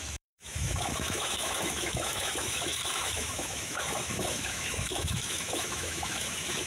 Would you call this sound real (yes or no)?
no